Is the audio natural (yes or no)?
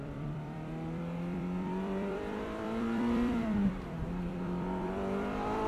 no